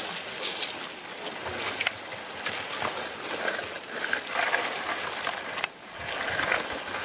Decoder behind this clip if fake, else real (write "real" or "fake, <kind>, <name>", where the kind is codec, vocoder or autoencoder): real